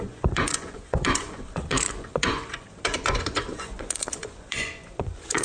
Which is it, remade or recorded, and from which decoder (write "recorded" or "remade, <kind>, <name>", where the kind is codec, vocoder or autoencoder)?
remade, vocoder, Vocos